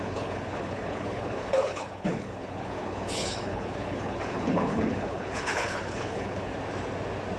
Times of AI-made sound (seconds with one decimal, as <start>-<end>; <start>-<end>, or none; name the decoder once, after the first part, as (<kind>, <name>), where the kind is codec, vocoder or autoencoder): 0.0-6.5 (codec, HILCodec)